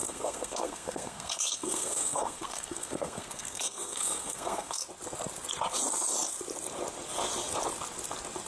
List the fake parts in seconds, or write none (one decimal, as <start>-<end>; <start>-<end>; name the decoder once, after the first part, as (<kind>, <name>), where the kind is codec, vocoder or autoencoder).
0.0-4.8 (codec, SNAC)